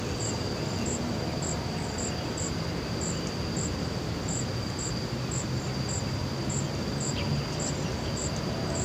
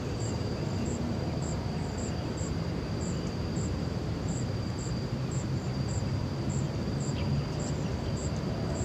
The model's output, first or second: second